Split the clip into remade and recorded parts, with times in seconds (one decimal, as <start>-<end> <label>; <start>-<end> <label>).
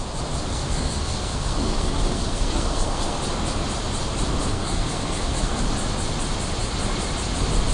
0.0-0.5 recorded; 0.5-3.2 remade; 3.2-4.5 recorded; 4.5-5.6 remade; 5.6-7.7 recorded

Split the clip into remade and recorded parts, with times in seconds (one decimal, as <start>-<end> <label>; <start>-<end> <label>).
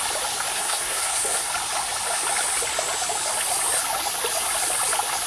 0.0-0.5 recorded; 0.5-1.5 remade; 1.5-5.3 recorded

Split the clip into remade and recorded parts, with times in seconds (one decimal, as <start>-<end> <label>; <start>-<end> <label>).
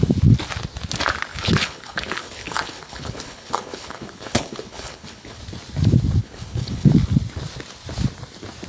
0.0-1.3 recorded; 1.3-5.4 remade; 5.4-6.2 recorded; 6.2-6.9 remade; 6.9-8.7 recorded